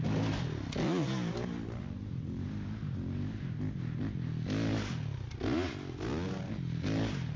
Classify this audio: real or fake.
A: real